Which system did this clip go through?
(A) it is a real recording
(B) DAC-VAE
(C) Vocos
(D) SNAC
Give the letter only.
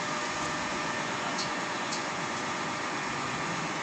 C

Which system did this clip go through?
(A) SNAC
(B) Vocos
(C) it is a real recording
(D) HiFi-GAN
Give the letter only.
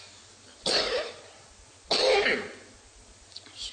C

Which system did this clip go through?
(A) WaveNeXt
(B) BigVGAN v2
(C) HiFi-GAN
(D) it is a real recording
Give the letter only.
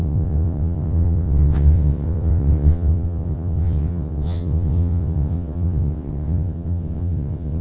A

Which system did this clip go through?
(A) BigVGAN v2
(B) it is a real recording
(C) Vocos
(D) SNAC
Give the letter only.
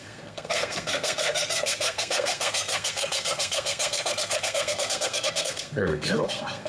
D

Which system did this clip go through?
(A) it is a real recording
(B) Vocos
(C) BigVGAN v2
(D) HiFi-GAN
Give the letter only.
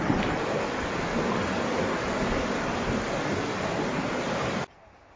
A